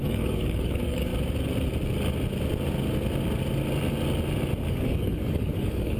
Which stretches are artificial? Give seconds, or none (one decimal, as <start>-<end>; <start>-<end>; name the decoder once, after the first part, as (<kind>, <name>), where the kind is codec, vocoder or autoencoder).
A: 0.0-1.1 (codec, DAC); 4.7-6.0